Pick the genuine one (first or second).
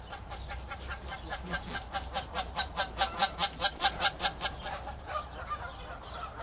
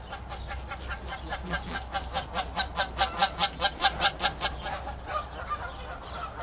second